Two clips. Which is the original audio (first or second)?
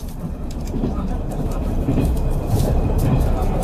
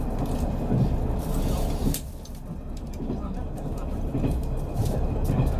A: second